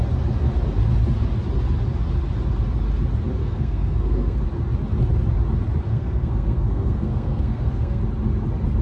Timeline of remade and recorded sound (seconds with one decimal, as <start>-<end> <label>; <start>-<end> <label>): 0.0-3.4 recorded; 3.4-4.4 remade; 4.4-5.9 recorded; 5.9-8.0 remade; 8.0-8.8 recorded